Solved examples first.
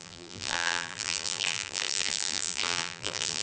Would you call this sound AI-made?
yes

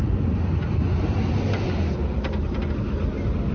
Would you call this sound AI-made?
no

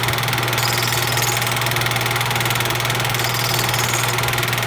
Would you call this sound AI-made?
no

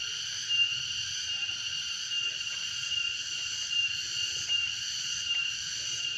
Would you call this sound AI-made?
yes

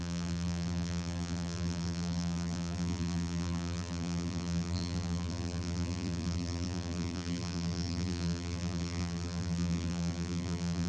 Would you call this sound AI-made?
yes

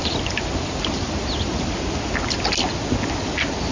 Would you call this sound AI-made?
no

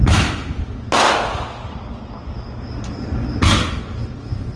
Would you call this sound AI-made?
no